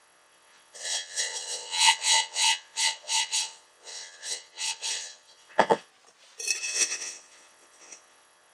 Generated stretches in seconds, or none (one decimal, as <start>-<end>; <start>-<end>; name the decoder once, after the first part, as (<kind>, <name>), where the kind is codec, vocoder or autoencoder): 0.0-5.9 (vocoder, WaveNeXt); 6.6-8.5